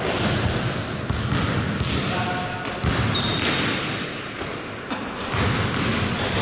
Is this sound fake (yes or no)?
no